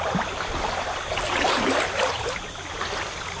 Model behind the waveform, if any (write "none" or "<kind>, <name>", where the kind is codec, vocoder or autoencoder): none